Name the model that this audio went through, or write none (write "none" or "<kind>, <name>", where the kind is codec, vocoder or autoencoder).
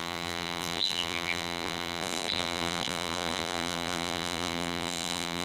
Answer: vocoder, BigVGAN v2